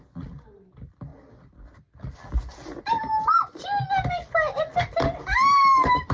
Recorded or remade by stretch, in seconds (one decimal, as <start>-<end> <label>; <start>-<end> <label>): 0.0-6.1 recorded